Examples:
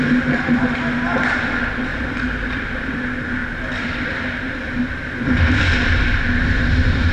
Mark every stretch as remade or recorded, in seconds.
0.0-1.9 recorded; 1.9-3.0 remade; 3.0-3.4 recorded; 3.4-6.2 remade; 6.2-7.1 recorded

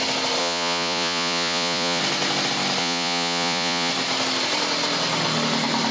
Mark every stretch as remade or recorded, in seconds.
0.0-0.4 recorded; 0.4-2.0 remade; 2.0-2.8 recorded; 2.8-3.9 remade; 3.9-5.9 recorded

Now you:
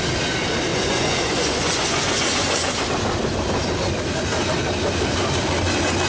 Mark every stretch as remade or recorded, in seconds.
0.0-0.7 recorded; 0.7-2.8 remade; 2.8-6.1 recorded

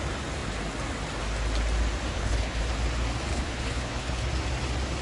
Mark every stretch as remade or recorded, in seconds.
0.0-2.1 recorded; 2.1-2.6 remade; 2.6-3.3 recorded; 3.3-4.3 remade; 4.3-5.0 recorded

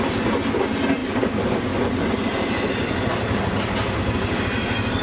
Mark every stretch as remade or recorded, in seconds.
0.0-5.0 recorded

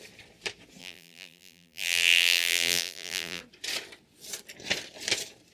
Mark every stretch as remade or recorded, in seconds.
0.0-0.8 recorded; 0.8-3.4 remade; 3.4-5.5 recorded